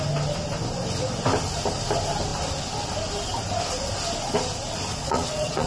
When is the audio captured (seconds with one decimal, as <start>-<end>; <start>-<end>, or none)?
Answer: 0.0-4.9